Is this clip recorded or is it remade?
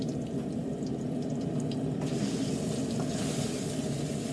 recorded